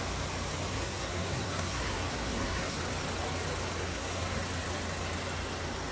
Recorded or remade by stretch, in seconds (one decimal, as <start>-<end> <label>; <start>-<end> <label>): 0.0-0.7 recorded; 0.7-2.8 remade; 2.8-3.8 recorded; 3.8-4.4 remade; 4.4-5.9 recorded